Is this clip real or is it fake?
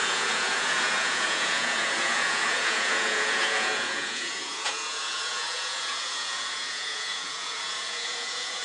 fake